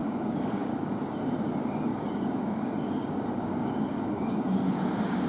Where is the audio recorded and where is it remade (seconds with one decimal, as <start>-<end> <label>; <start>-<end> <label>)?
0.0-1.0 remade; 1.0-1.9 recorded; 1.9-5.3 remade

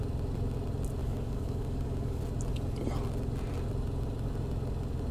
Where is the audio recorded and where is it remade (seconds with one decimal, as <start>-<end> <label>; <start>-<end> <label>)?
0.0-1.0 recorded; 1.0-2.2 remade; 2.2-5.1 recorded

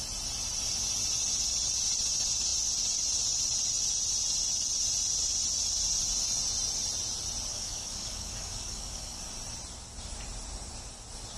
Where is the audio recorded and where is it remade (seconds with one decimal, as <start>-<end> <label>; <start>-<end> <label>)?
0.0-7.5 recorded; 7.5-9.2 remade; 9.2-11.4 recorded

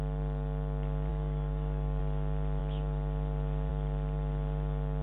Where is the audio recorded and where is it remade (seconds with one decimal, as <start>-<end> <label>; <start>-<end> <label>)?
0.0-1.1 recorded; 1.1-2.0 remade; 2.0-5.0 recorded

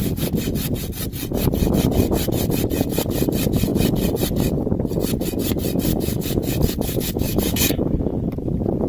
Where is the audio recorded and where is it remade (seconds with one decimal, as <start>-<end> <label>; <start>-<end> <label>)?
0.0-5.9 recorded; 5.9-7.8 remade; 7.8-8.9 recorded